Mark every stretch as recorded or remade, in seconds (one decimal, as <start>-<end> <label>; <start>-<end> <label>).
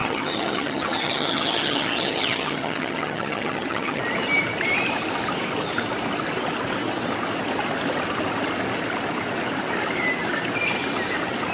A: 0.0-4.0 remade; 4.0-11.5 recorded